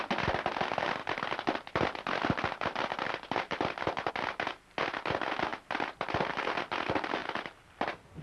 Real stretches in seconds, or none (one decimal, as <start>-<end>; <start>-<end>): 0.0-1.0; 4.1-7.2